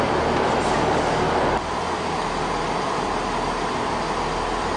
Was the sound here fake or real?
real